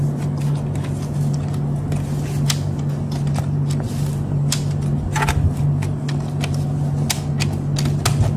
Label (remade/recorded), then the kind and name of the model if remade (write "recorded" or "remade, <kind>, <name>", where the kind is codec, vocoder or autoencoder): recorded